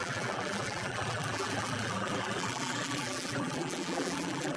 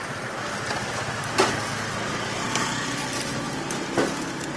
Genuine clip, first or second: second